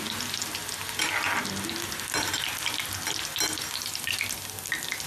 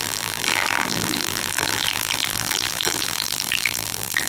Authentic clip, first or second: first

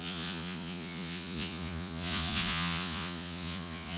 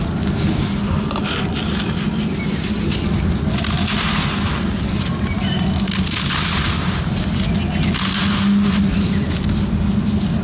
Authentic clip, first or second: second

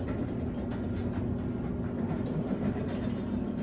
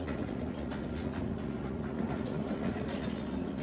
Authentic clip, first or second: first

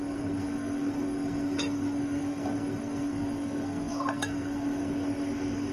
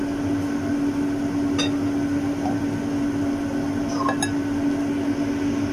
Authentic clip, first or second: second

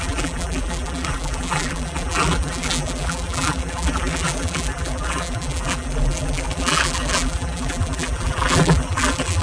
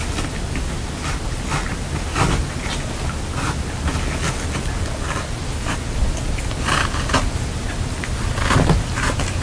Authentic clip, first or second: second